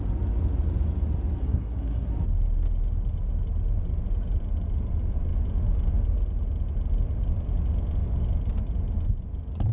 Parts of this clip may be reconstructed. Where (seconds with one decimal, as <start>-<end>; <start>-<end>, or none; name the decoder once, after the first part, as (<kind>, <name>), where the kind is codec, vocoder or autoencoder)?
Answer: 1.4-2.1 (codec, SNAC)